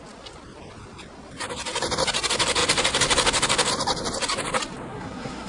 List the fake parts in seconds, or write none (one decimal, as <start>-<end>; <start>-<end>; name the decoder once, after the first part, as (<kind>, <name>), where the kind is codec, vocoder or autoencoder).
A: 4.9-5.5 (codec, SNAC)

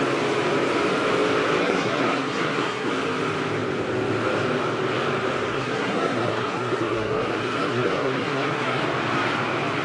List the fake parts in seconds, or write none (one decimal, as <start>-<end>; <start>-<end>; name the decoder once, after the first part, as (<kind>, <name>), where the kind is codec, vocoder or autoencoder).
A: 1.6-2.9 (codec, SNAC); 5.5-8.8

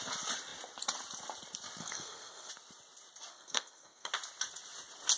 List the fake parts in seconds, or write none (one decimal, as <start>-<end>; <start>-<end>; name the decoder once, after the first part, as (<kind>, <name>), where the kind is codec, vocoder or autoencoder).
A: 1.8-2.5 (codec, SNAC); 3.3-4.1

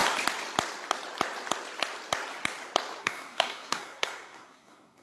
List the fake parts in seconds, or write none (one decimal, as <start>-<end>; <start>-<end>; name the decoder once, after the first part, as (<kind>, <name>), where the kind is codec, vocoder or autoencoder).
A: 3.0-5.0 (codec, SNAC)

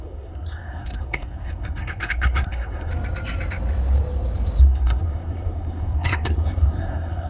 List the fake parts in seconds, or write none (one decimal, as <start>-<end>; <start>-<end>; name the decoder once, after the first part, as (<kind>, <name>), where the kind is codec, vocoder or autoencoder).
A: 0.0-2.9 (codec, SNAC); 4.6-7.3

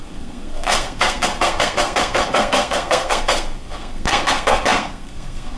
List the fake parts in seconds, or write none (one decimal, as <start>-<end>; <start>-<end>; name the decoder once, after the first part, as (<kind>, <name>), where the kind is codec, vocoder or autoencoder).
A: 0.0-5.6 (codec, SNAC)

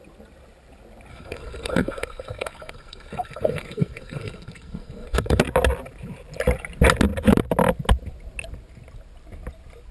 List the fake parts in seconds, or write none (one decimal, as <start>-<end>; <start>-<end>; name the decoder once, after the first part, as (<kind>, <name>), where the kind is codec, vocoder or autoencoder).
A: 1.1-5.4 (codec, SNAC)

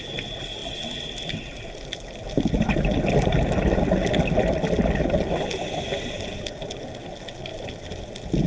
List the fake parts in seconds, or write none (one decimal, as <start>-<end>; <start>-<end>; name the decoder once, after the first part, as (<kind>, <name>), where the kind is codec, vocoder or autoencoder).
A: none